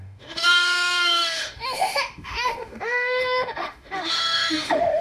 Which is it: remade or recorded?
remade